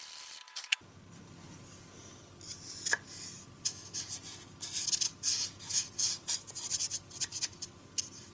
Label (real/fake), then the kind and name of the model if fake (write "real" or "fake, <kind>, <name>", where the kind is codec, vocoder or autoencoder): real